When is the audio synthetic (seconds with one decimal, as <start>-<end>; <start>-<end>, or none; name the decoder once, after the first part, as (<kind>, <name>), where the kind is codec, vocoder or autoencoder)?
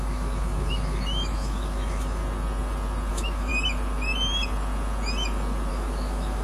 0.0-2.2 (autoencoder, DAC-VAE); 3.1-3.5; 5.7-6.4